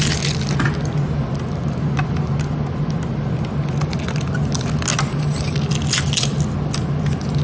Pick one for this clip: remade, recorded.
recorded